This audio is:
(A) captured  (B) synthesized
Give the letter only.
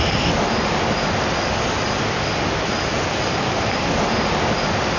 A